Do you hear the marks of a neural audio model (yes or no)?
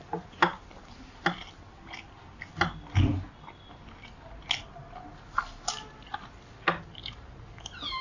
no